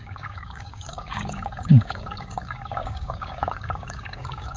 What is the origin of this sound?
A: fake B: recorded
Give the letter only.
A